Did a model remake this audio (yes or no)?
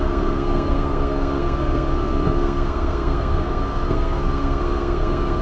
yes